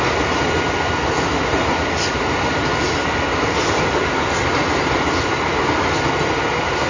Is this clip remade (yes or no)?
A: no